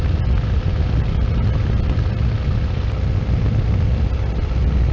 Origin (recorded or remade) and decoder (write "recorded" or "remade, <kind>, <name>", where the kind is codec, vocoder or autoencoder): recorded